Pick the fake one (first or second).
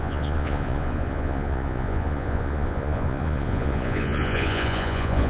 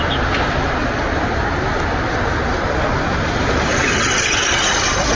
first